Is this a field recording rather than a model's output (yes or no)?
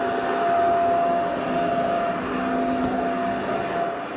yes